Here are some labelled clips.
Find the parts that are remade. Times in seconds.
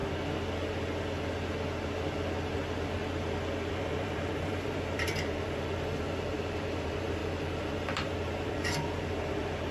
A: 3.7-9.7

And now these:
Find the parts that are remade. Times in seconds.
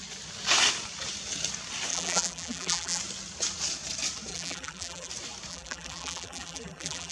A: 1.9-3.0; 4.3-5.1; 5.5-7.1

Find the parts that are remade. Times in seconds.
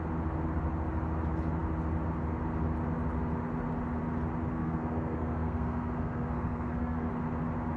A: 4.5-7.1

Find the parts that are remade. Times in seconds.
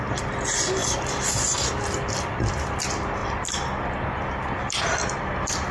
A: 0.8-2.8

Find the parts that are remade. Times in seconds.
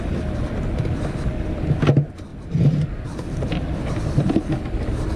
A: 2.3-4.0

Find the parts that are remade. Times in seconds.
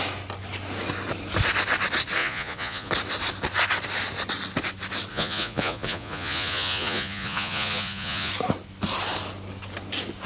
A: 2.2-2.9; 5.1-8.3